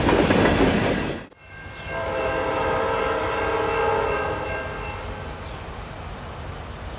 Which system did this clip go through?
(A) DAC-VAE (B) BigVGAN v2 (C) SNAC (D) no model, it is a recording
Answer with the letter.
D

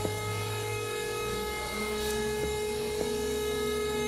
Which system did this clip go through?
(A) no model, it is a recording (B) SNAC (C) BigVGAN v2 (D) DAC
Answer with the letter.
D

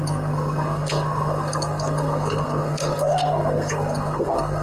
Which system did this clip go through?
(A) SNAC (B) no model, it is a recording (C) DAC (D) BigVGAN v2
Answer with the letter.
A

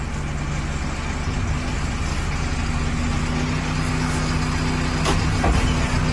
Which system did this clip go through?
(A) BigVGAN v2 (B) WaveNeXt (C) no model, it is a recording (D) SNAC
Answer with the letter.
C